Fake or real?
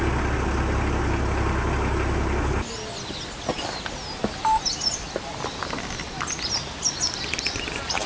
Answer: real